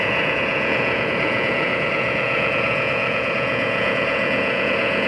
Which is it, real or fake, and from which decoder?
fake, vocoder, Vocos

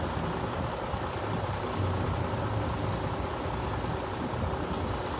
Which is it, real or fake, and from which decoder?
real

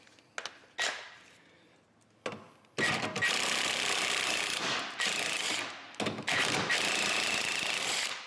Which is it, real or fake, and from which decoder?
real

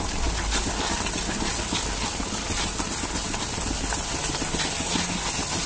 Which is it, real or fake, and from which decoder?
real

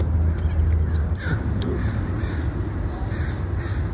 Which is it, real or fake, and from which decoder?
real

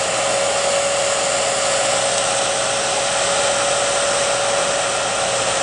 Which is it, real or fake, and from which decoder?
real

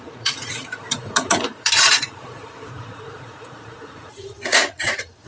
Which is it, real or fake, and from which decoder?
fake, vocoder, Vocos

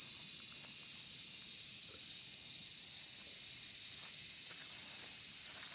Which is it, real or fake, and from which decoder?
real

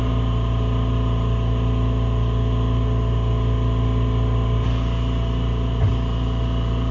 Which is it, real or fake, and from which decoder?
real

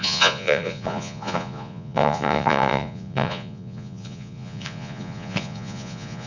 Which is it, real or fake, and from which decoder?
fake, vocoder, Vocos